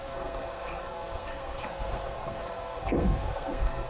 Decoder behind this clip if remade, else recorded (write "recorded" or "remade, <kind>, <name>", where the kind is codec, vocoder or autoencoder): remade, codec, SNAC